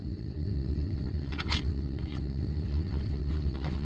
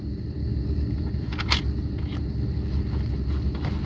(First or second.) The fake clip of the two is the first